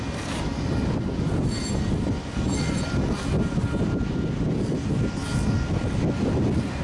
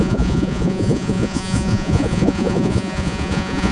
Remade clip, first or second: second